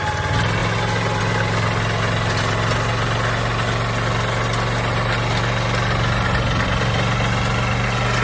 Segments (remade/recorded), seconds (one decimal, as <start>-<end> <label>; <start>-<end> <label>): 0.0-8.2 recorded